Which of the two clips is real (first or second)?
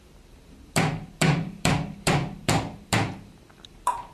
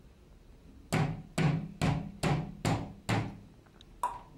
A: second